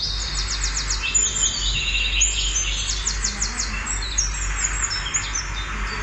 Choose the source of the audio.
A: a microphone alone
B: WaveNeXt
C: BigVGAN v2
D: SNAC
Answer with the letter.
A